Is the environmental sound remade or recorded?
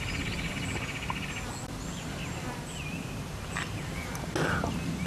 recorded